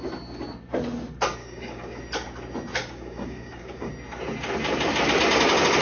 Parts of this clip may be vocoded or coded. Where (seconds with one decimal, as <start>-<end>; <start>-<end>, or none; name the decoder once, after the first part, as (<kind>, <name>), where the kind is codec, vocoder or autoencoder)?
1.4-2.0 (codec, DAC); 2.8-3.9